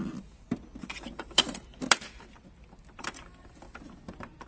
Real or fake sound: fake